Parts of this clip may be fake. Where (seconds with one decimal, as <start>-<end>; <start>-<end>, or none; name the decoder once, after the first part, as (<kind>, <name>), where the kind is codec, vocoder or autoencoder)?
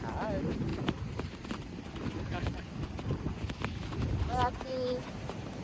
none